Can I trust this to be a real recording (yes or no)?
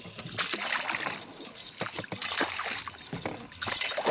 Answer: yes